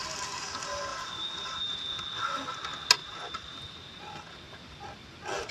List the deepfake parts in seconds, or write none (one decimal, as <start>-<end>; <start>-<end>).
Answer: 0.9-1.9; 3.0-4.0